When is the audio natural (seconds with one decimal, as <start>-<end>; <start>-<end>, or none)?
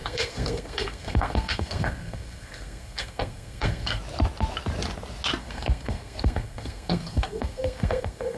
4.0-5.4